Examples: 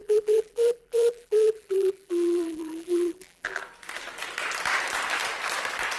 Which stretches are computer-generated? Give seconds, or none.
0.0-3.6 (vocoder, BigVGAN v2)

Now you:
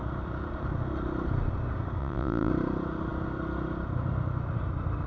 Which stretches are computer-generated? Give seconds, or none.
2.0-2.5 (vocoder, WaveNeXt)